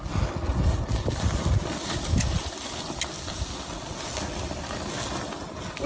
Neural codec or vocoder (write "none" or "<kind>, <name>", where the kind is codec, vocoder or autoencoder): none